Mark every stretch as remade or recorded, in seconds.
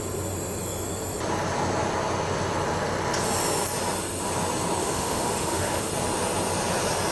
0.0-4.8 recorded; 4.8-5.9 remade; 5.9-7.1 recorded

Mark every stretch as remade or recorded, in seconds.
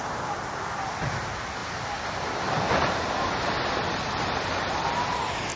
0.0-5.6 recorded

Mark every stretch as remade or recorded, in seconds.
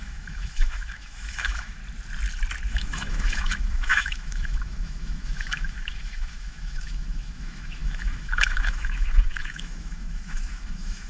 0.0-1.8 remade; 1.8-2.7 recorded; 2.7-11.1 remade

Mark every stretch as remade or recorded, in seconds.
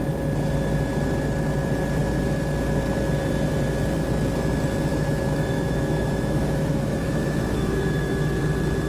0.0-4.9 recorded; 4.9-8.4 remade; 8.4-8.9 recorded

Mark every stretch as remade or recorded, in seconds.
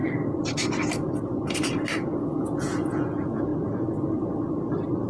0.0-2.2 recorded; 2.2-3.5 remade; 3.5-5.1 recorded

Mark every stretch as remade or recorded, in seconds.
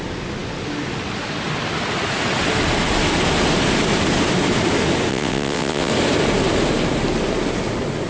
0.0-5.1 recorded; 5.1-5.9 remade; 5.9-8.1 recorded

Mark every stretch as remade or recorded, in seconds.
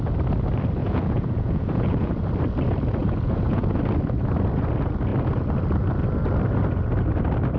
0.0-0.8 recorded; 0.8-2.1 remade; 2.1-3.0 recorded; 3.0-3.8 remade; 3.8-7.6 recorded